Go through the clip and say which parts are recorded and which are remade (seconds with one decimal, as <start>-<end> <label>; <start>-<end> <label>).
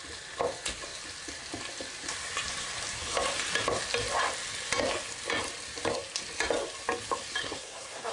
0.0-7.4 recorded; 7.4-8.1 remade